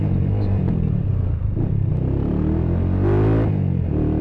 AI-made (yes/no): no